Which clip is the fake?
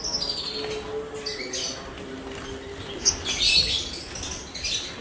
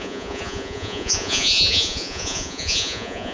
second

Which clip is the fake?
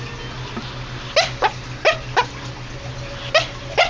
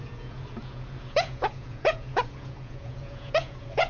second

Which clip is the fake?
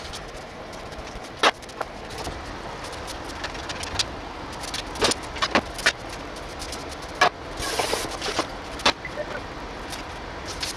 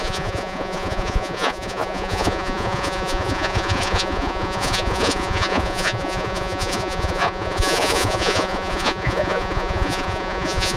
second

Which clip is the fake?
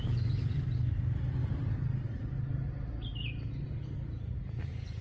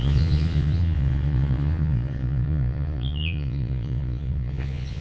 second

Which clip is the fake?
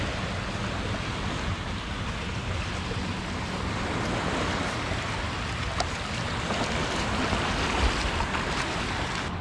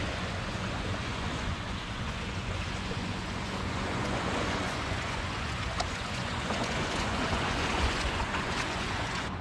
second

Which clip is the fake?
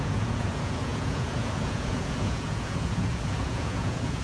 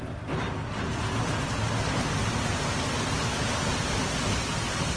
first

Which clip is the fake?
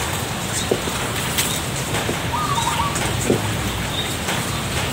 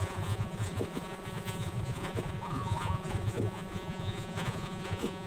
second